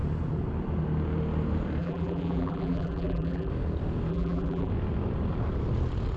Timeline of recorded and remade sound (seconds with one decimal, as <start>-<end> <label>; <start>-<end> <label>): 0.0-1.8 recorded; 1.8-3.5 remade; 3.5-4.1 recorded; 4.1-4.7 remade; 4.7-6.2 recorded